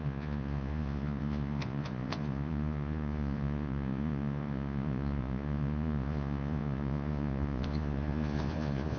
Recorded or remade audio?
remade